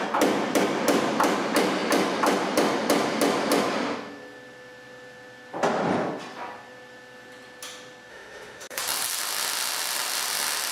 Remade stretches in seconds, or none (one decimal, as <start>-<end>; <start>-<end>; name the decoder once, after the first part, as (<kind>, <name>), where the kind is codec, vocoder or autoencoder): 8.1-8.8 (autoencoder, DAC-VAE)